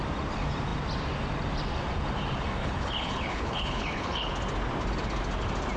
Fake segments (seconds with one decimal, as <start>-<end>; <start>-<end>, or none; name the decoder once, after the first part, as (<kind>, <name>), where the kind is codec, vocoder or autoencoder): 2.6-4.3 (codec, HILCodec)